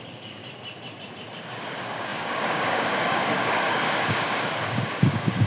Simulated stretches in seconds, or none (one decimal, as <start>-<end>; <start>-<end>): 0.0-0.4; 1.6-5.5